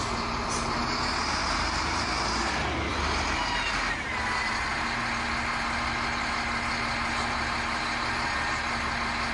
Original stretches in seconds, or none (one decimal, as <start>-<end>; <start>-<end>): 0.0-9.3